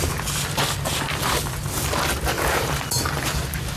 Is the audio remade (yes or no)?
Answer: no